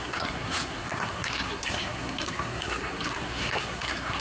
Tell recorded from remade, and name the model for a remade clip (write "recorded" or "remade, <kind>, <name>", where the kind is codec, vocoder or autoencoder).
remade, codec, SNAC